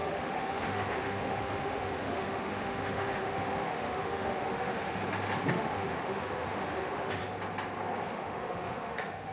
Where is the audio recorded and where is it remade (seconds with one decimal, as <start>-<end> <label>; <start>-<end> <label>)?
0.0-5.0 remade; 5.0-5.5 recorded; 5.5-7.2 remade; 7.2-8.1 recorded; 8.1-9.3 remade